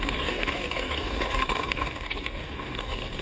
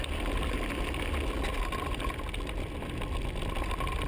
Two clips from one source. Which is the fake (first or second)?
first